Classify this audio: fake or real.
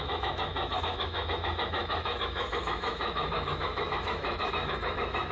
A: fake